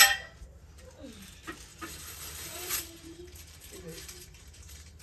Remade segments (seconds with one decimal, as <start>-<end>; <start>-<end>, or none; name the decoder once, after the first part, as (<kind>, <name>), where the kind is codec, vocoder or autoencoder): 1.7-5.0 (vocoder, BigVGAN v2)